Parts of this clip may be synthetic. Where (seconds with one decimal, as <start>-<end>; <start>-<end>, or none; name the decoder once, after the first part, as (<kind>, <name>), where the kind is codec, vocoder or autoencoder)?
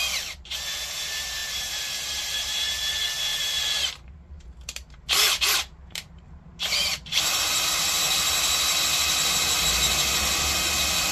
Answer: 1.4-2.8 (vocoder, BigVGAN v2); 3.3-7.4